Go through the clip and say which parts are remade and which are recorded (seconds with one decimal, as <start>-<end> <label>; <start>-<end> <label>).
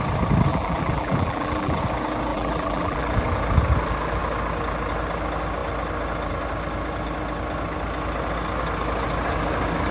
0.0-0.5 recorded; 0.5-1.8 remade; 1.8-2.3 recorded; 2.3-3.1 remade; 3.1-9.9 recorded